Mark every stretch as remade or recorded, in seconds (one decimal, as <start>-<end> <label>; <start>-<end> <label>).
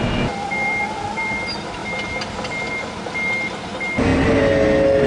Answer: 0.0-5.1 recorded